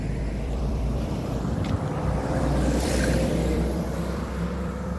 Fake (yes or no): yes